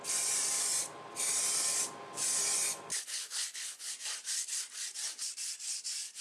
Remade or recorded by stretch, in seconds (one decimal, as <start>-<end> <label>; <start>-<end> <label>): 0.0-2.9 recorded; 2.9-3.9 remade; 3.9-6.2 recorded